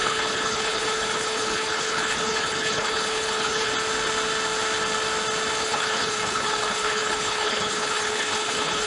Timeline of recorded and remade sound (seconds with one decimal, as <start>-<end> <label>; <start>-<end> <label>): 0.0-3.7 remade; 3.7-5.6 recorded; 5.6-8.9 remade